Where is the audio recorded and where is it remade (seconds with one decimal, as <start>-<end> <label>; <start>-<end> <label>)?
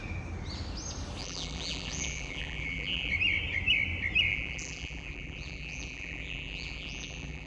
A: 0.0-1.2 recorded; 1.2-3.1 remade; 3.1-4.3 recorded; 4.3-7.5 remade